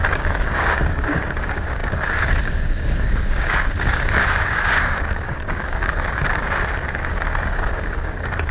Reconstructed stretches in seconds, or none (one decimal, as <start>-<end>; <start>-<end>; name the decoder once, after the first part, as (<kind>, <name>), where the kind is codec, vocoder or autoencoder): 0.0-8.5 (codec, DAC)